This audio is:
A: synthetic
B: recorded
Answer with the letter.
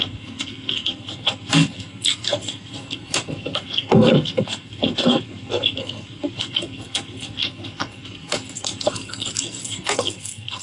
A